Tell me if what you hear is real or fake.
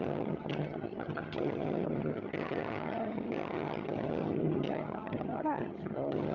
fake